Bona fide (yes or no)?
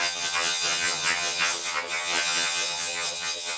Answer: no